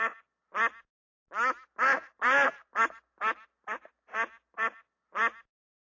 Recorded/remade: recorded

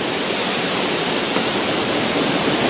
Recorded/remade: recorded